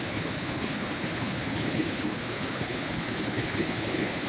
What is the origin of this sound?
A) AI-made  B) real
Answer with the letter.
A